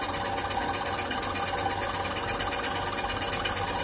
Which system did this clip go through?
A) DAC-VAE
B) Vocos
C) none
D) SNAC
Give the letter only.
C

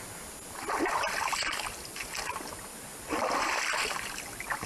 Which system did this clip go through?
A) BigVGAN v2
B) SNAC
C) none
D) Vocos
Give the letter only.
C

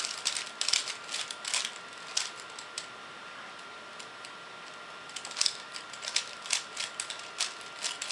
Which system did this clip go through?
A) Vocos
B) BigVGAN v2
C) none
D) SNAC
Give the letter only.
C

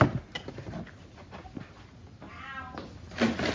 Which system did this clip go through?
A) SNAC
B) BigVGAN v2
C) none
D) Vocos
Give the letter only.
C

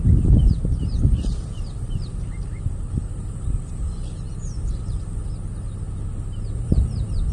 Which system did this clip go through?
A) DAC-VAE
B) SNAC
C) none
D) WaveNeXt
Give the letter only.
C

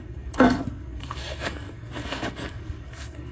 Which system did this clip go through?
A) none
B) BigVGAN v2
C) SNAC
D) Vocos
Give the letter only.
C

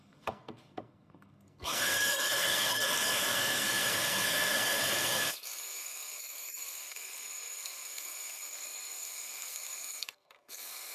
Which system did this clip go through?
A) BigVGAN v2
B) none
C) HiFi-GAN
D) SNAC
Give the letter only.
D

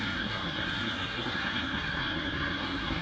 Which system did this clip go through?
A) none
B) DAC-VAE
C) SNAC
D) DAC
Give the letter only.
C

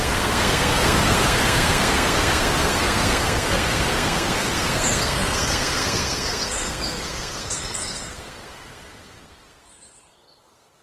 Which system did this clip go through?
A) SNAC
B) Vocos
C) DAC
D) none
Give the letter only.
A